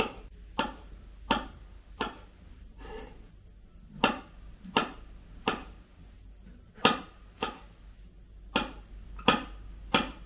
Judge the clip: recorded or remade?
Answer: recorded